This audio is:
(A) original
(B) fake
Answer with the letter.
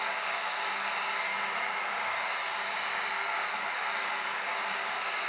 B